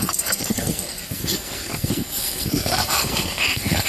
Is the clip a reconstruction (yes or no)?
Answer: yes